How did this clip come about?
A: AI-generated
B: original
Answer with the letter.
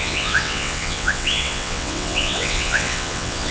A